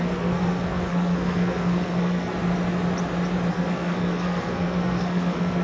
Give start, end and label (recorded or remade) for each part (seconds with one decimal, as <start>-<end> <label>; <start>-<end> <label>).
0.0-2.3 remade; 2.3-3.5 recorded; 3.5-5.6 remade